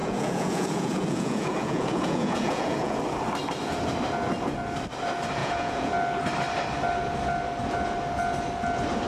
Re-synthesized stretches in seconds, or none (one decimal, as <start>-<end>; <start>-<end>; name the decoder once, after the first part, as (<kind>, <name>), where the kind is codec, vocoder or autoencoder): 0.0-3.0 (vocoder, Vocos); 5.4-5.9